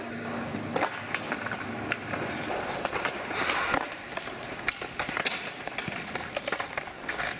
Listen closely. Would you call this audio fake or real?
real